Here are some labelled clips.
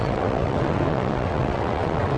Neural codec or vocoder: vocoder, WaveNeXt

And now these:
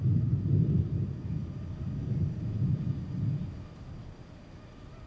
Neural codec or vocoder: none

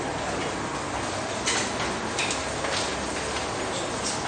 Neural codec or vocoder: none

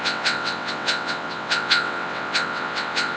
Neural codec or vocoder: vocoder, WaveNeXt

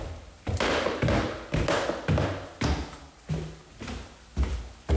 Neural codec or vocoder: none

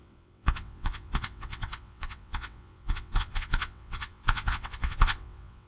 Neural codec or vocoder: vocoder, WaveNeXt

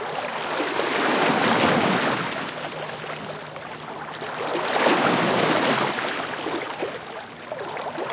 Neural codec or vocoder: none